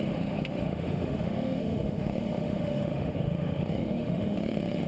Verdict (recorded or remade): remade